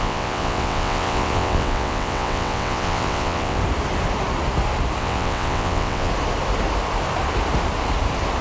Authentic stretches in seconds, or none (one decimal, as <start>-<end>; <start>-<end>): 3.6-5.0; 6.1-8.4